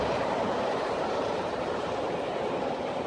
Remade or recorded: remade